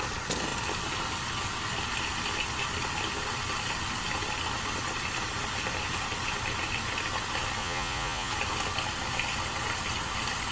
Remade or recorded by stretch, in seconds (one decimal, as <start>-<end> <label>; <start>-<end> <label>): 0.0-7.6 recorded; 7.6-8.3 remade; 8.3-10.5 recorded